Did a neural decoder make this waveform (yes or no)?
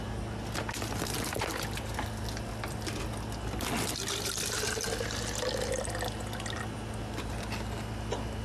no